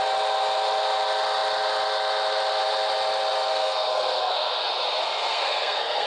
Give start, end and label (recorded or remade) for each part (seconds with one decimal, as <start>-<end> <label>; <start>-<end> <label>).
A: 0.0-3.5 recorded; 3.5-4.6 remade; 4.6-5.0 recorded; 5.0-6.1 remade